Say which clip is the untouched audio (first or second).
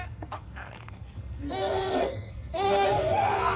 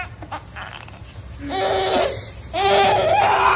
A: second